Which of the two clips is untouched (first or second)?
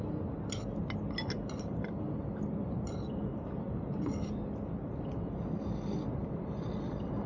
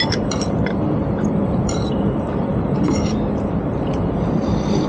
first